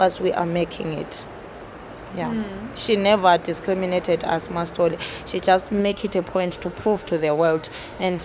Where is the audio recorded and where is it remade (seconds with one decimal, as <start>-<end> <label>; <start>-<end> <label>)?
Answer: 0.0-5.8 recorded; 5.8-8.2 remade